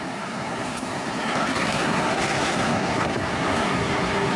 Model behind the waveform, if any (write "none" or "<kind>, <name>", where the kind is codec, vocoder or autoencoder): codec, SNAC